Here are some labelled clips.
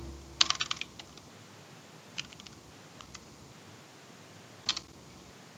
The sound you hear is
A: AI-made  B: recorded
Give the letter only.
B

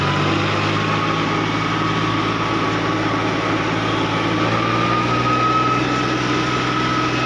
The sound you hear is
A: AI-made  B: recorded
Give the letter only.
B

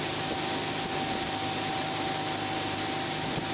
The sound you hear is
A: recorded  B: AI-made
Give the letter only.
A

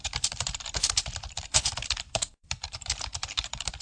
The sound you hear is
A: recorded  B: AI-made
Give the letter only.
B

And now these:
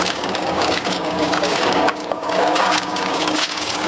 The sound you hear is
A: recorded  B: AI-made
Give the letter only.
B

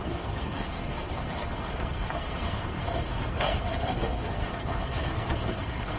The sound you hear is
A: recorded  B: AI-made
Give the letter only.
B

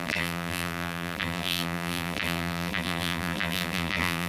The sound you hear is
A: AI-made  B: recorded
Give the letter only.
A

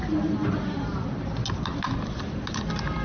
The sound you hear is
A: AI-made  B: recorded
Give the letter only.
B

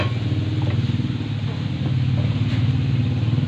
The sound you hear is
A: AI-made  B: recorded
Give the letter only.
B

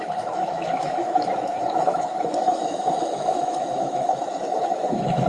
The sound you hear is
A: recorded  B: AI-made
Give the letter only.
B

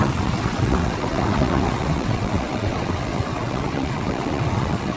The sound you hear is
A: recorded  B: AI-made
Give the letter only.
B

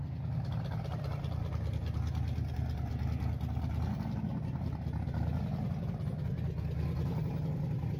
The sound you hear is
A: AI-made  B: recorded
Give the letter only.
B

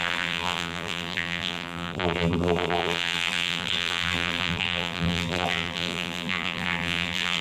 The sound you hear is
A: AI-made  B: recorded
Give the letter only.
A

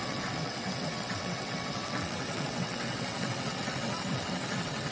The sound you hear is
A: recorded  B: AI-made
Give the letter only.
B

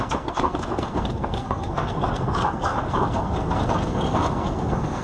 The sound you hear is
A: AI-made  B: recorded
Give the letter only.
A